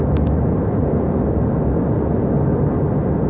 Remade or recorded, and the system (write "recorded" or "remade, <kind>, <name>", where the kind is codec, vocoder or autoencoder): recorded